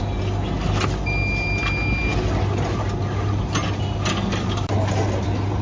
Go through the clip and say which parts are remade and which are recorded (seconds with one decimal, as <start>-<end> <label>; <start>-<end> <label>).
0.0-5.6 recorded